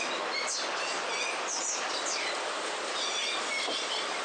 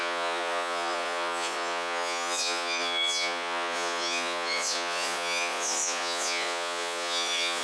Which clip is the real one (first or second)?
first